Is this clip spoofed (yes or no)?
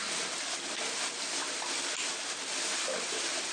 no